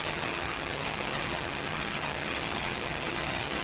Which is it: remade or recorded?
remade